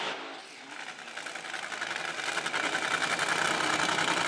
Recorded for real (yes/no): yes